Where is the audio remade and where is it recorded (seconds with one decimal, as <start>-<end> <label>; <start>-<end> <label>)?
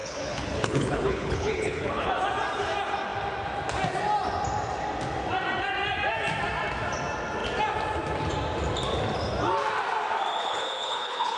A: 0.0-2.1 remade; 2.1-10.4 recorded; 10.4-11.4 remade